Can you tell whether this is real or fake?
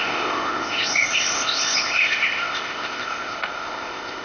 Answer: fake